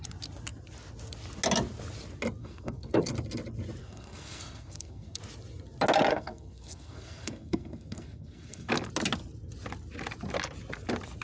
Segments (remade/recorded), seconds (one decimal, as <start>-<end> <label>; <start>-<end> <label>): 0.0-2.4 recorded; 2.4-3.0 remade; 3.0-3.8 recorded; 3.8-5.2 remade; 5.2-6.1 recorded; 6.1-8.7 remade; 8.7-11.2 recorded